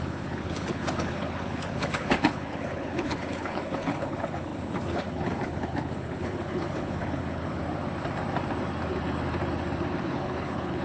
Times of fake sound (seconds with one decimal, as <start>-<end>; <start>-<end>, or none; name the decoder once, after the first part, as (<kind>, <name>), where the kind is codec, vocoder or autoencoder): 0.0-7.6 (codec, HILCodec); 10.0-10.8